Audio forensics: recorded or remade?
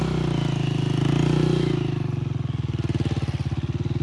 recorded